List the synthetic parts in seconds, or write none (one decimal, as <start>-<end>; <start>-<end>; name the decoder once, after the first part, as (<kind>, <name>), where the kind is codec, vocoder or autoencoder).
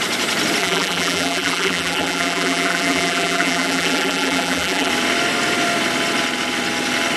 0.6-4.9 (vocoder, BigVGAN v2)